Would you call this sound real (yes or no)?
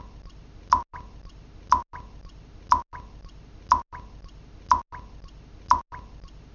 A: yes